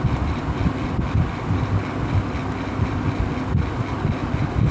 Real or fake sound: real